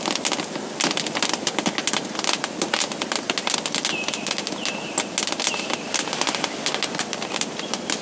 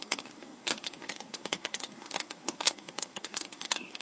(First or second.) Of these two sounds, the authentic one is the first